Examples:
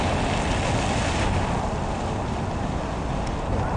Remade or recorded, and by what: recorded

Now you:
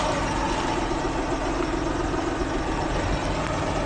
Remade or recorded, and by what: recorded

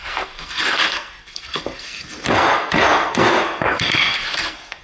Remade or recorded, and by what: remade, codec, SNAC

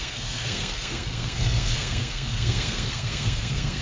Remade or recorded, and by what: remade, codec, SNAC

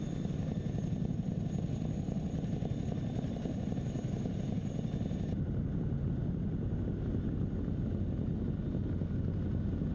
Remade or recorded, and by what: recorded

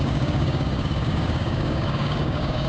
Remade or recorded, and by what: remade, codec, DAC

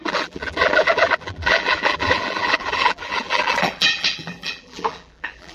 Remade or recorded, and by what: remade, vocoder, BigVGAN v2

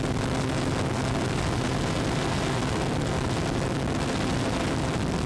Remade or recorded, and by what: recorded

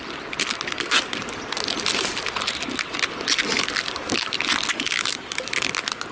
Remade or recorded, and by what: recorded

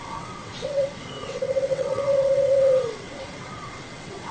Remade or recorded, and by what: remade, vocoder, WaveNeXt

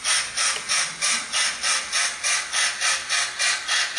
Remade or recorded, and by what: recorded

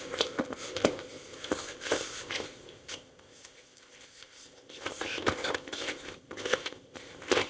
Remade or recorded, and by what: remade, codec, ZipCodec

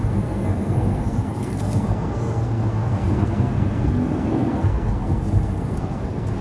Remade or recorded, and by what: remade, codec, SNAC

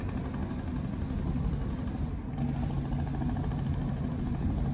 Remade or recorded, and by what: recorded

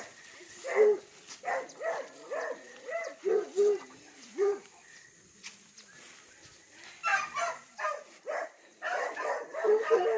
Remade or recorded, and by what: recorded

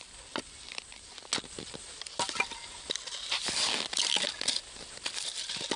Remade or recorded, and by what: recorded